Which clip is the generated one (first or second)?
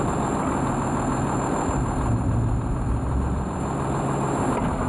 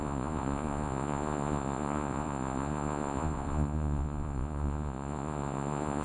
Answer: second